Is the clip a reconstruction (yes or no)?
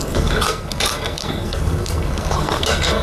yes